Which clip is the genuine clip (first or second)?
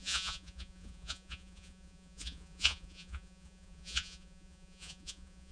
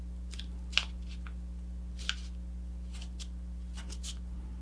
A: second